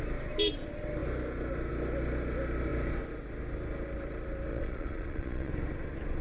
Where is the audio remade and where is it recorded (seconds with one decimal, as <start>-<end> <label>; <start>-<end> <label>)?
0.0-4.5 recorded; 4.5-5.5 remade; 5.5-6.2 recorded